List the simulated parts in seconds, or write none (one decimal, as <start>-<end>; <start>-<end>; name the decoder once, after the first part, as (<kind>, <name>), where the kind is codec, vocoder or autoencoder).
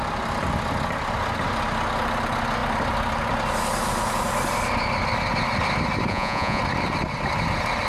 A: 6.1-6.6 (vocoder, Vocos)